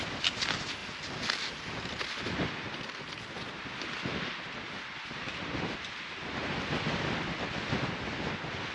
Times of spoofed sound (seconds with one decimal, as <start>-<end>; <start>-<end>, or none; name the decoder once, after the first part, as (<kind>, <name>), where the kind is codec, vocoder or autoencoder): none